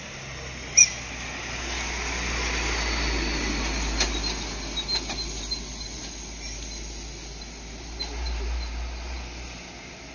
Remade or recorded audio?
recorded